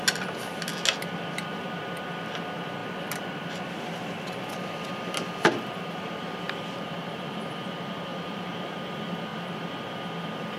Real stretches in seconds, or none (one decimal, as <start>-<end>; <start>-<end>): 0.0-8.1; 8.8-10.6

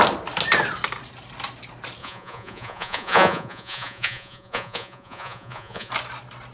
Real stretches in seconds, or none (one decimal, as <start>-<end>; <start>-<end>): 0.0-2.0; 5.9-6.5

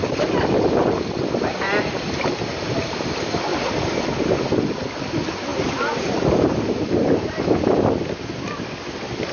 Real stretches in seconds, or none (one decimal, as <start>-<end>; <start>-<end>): 0.0-9.3